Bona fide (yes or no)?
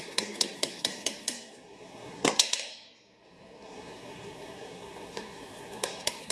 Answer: no